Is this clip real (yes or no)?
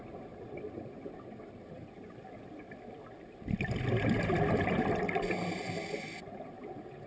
yes